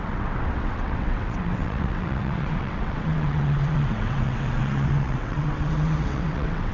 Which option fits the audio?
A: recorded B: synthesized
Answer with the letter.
B